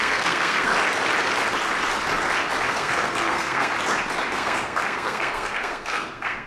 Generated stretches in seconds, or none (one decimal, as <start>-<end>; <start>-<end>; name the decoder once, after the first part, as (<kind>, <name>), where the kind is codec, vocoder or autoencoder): 0.0-0.7 (codec, SNAC); 2.7-3.7; 4.3-6.5